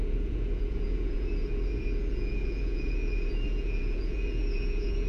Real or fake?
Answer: fake